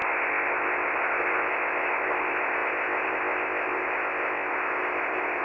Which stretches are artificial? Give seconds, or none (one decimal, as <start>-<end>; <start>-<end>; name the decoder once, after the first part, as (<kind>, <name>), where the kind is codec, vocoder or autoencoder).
0.0-5.4 (codec, ZipCodec)